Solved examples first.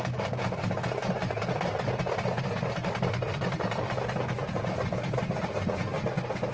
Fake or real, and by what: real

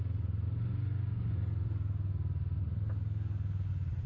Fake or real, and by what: real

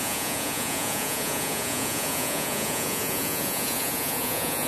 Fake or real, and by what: fake, vocoder, Vocos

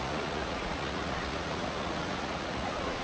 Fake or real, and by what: fake, vocoder, Vocos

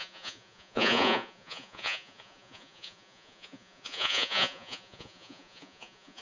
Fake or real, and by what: fake, vocoder, Vocos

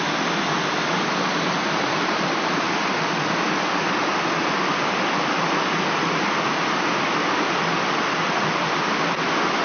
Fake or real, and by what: real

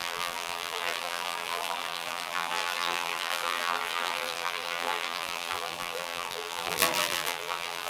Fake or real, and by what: fake, vocoder, BigVGAN v2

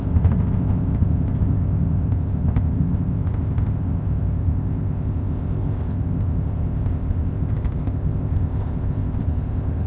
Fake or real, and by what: fake, codec, ZipCodec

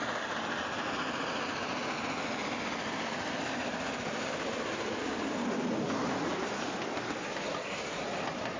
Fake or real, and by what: real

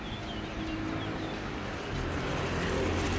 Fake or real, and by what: real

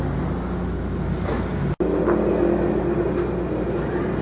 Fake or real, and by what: real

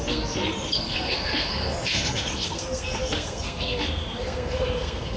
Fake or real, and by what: fake, codec, SNAC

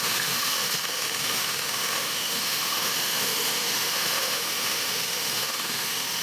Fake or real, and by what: fake, autoencoder, DAC-VAE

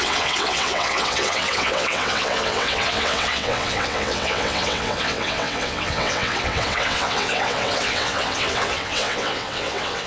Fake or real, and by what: fake, vocoder, WaveNeXt